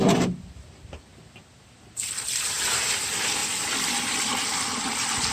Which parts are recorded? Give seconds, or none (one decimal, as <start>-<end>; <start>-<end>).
0.0-3.4; 4.4-5.3